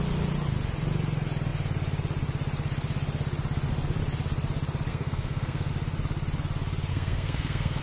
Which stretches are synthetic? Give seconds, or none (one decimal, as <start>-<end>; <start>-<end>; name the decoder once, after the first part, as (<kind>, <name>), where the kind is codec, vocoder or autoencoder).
4.9-5.7 (codec, SNAC); 6.9-7.8